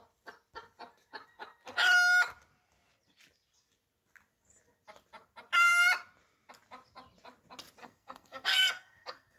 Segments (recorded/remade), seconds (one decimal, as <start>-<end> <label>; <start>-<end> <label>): 0.0-7.8 recorded; 7.8-9.4 remade